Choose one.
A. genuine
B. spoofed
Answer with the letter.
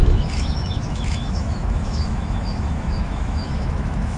B